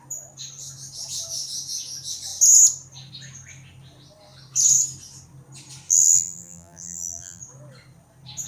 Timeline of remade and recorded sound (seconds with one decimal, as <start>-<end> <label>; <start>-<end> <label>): 0.0-5.9 recorded; 5.9-7.4 remade; 7.4-8.5 recorded